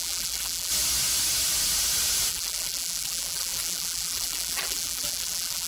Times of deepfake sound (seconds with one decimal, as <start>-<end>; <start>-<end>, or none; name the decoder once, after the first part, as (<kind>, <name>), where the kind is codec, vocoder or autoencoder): 0.0-0.7 (vocoder, BigVGAN v2); 2.3-5.7

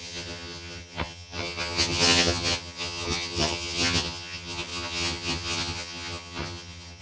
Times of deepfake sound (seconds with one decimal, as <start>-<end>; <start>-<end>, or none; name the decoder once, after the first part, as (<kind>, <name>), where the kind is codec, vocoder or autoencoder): 0.0-7.0 (vocoder, HiFi-GAN)

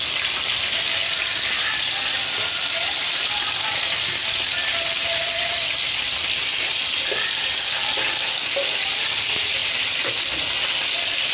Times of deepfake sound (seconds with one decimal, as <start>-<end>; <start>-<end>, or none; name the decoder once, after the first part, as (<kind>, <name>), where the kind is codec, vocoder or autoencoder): none